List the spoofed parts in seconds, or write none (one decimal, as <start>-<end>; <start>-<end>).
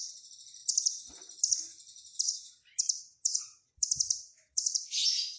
0.0-0.6; 2.2-5.4